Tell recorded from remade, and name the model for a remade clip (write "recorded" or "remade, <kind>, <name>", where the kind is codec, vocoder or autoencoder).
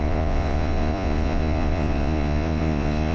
remade, vocoder, Vocos